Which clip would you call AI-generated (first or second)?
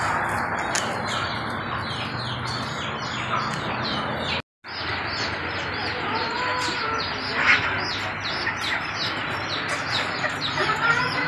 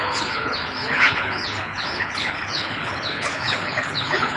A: second